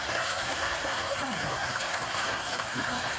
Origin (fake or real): fake